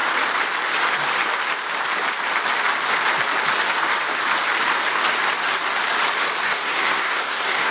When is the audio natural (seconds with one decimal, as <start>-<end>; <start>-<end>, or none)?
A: 0.0-6.4